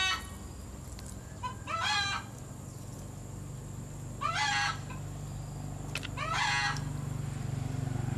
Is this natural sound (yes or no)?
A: yes